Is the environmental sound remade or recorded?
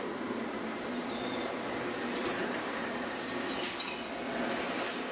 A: recorded